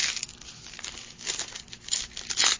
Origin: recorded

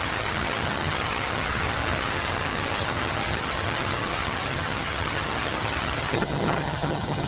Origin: remade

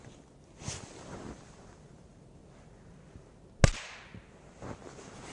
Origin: recorded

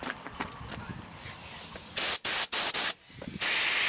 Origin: recorded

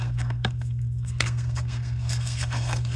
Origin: remade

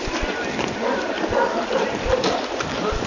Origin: remade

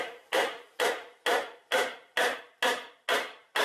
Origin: recorded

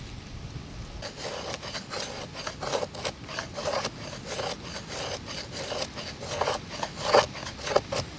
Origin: recorded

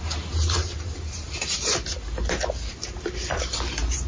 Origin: remade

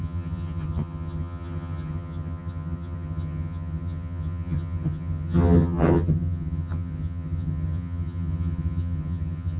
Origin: remade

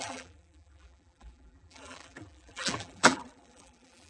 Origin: remade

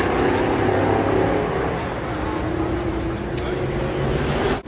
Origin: recorded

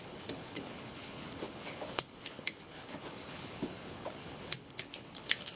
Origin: remade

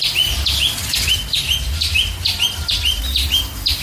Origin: recorded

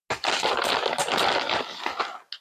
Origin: recorded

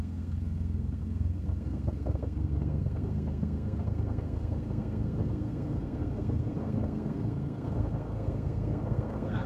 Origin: remade